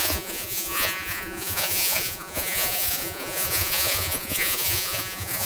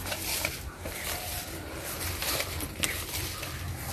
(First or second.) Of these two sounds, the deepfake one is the first